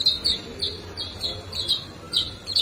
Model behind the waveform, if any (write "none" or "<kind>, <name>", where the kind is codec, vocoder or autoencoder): none